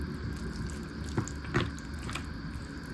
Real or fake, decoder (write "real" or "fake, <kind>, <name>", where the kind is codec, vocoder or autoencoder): real